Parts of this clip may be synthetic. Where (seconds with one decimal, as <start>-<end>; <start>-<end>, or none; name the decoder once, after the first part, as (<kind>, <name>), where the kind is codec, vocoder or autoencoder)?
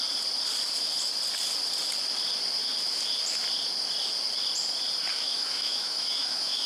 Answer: 5.1-6.7 (autoencoder, DAC-VAE)